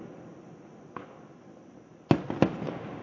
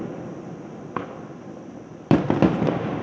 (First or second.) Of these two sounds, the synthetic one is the second